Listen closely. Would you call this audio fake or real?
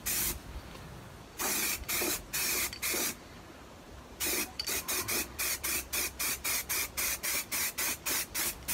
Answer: fake